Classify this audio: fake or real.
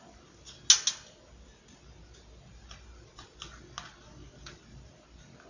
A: real